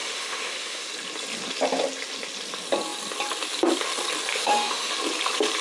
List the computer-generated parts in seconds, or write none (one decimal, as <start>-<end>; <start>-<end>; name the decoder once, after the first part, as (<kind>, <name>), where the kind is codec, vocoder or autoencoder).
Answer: 0.0-0.9 (autoencoder, DAC-VAE); 4.3-4.9